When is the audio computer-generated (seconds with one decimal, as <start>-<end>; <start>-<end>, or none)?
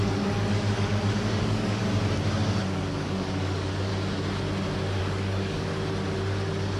0.0-1.8; 2.6-3.9; 5.0-5.7